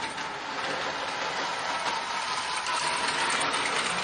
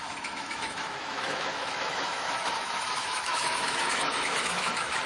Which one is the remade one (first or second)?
second